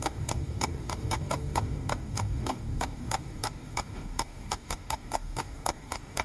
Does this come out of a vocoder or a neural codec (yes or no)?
yes